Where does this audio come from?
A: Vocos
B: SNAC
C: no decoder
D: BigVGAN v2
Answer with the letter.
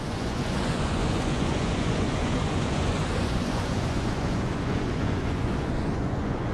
A